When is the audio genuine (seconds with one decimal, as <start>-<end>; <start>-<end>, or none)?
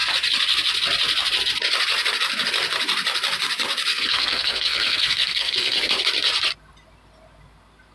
0.0-3.9; 5.9-7.9